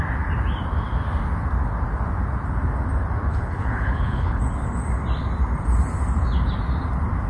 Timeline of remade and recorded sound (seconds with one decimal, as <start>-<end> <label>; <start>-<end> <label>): 0.0-3.3 recorded; 3.3-4.4 remade; 4.4-7.3 recorded